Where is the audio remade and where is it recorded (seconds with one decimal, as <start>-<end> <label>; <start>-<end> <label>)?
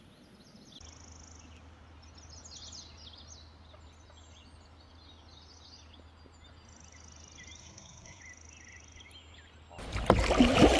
0.0-7.6 recorded; 7.6-8.2 remade; 8.2-10.8 recorded